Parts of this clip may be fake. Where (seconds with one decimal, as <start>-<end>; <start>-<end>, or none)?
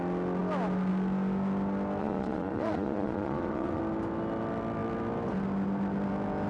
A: 2.0-3.8